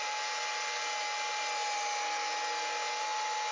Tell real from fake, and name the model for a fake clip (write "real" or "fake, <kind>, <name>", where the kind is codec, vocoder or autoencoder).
real